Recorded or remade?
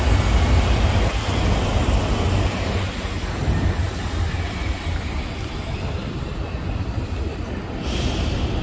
recorded